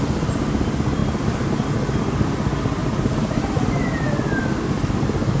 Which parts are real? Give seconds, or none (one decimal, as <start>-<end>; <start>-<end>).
0.0-2.8; 3.8-5.4